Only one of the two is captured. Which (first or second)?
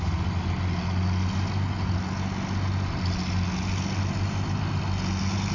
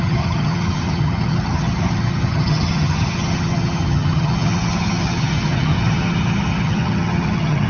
first